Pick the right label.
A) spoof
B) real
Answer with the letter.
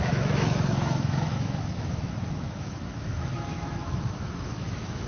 A